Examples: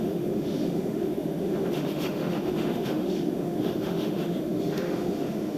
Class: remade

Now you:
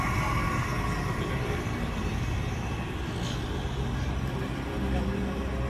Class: recorded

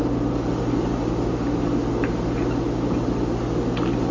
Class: recorded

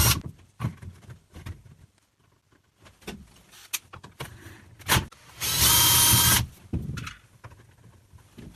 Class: recorded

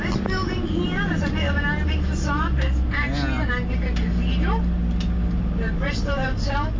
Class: recorded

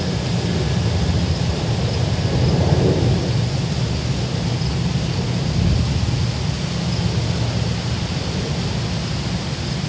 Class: recorded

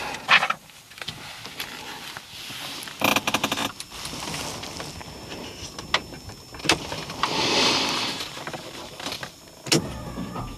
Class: recorded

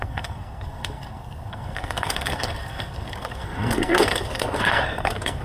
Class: remade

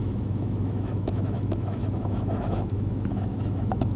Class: remade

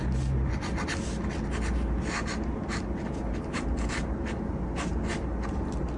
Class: recorded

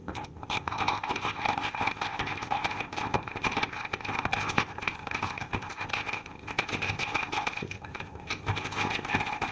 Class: remade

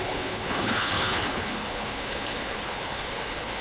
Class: remade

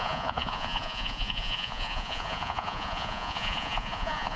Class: remade